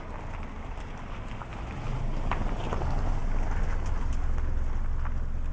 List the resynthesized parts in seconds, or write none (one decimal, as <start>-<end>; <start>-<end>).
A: none